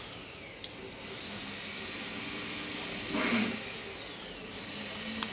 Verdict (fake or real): real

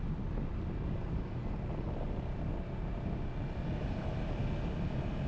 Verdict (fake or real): real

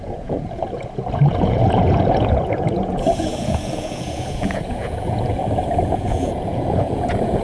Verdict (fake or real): fake